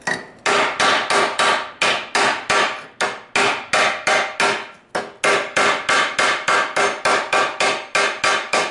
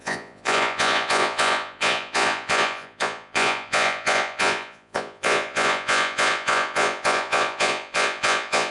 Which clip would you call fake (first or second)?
second